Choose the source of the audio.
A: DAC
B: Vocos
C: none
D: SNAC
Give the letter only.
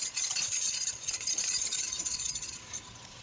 B